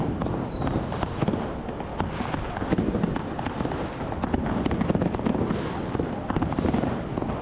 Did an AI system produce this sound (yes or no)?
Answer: no